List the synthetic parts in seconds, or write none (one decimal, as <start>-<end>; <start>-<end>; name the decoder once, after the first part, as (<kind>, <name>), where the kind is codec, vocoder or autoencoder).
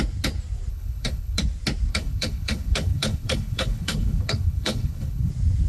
0.7-1.4 (codec, HILCodec); 1.9-5.3